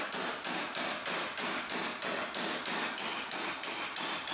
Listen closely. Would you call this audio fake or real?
real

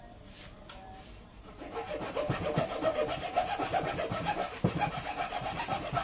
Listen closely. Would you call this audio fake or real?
real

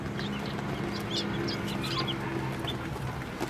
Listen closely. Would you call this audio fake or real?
real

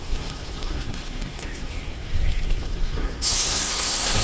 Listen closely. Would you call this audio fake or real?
fake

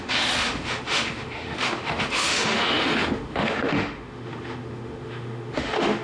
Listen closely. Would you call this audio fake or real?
fake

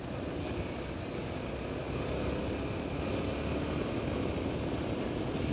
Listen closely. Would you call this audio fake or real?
real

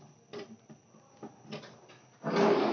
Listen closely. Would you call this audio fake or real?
real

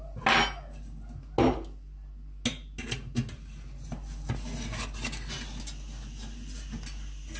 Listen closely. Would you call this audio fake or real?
real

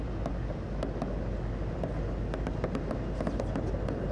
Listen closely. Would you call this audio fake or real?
real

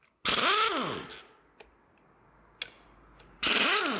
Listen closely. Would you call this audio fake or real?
real